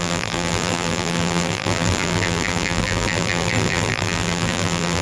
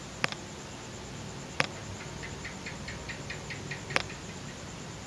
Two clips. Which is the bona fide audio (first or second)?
second